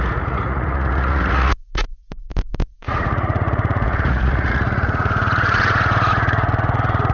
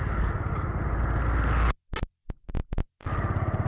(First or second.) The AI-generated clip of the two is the first